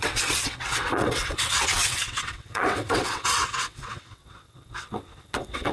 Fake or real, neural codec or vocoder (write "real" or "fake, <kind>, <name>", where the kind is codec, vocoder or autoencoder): fake, vocoder, WaveNeXt